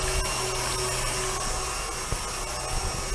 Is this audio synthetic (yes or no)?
no